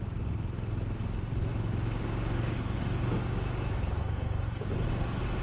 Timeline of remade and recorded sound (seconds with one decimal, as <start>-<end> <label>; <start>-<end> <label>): 0.0-1.5 recorded; 1.5-4.7 remade; 4.7-5.4 recorded